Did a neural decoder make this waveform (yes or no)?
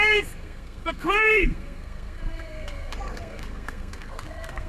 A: yes